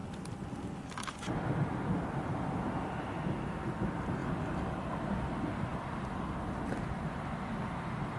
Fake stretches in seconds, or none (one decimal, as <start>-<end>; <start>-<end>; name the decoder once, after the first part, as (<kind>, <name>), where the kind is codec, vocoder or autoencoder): none